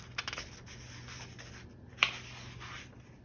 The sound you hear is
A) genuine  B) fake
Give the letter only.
A